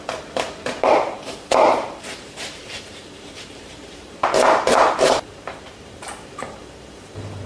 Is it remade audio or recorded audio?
remade